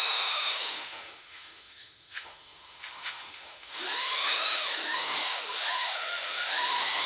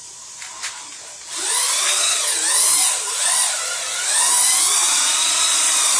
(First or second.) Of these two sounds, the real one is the second